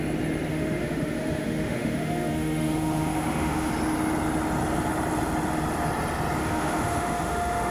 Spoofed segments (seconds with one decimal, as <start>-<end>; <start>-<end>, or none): 0.5-3.7; 6.4-7.7